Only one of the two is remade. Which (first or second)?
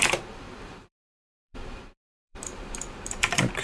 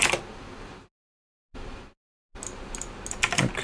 first